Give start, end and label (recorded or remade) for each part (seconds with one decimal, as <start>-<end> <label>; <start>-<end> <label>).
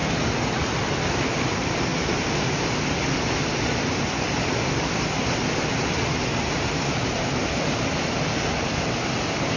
0.0-9.6 recorded